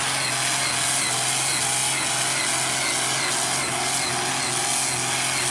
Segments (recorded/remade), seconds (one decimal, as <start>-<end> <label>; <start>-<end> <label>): 0.0-5.5 recorded